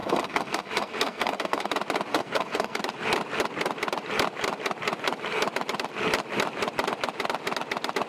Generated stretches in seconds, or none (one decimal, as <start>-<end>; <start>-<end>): 0.0-1.7; 2.1-2.8

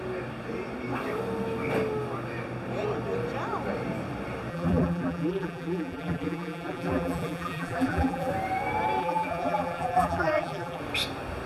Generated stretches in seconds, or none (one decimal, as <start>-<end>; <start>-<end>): 4.5-8.3; 9.0-10.8

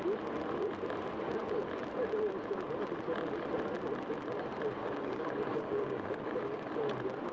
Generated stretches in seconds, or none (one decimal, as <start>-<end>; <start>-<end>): 4.8-6.7

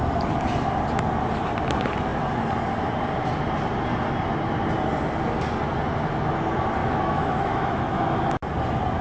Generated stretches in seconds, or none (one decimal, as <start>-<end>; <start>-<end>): 6.8-8.2

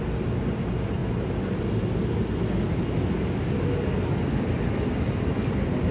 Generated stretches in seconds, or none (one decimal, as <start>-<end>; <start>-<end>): none